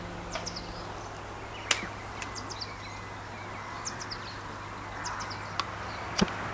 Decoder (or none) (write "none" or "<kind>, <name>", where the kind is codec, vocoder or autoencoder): none